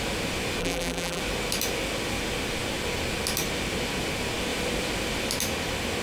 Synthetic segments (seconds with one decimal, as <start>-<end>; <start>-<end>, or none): 0.6-1.2